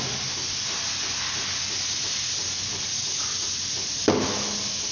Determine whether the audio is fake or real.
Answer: real